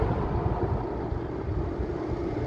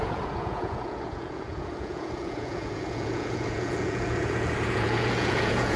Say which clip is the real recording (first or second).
first